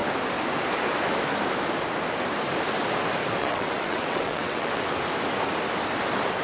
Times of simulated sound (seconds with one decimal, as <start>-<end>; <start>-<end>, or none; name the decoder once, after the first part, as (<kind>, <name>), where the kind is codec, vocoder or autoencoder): 3.4-5.0 (vocoder, WaveNeXt)